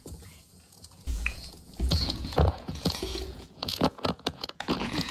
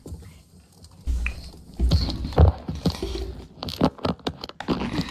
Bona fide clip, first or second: second